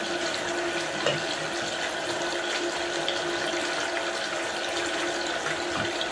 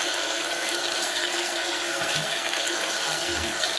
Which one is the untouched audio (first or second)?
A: first